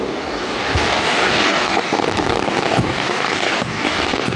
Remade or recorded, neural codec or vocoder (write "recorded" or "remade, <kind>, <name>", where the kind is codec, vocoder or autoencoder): remade, codec, DAC